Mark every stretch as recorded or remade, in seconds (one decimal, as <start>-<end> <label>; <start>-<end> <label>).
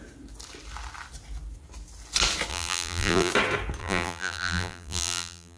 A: 0.0-2.5 recorded; 2.5-3.3 remade; 3.3-3.8 recorded; 3.8-5.6 remade